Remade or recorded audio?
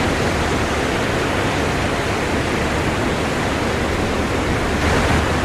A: recorded